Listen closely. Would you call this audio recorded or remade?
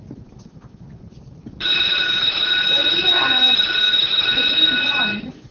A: recorded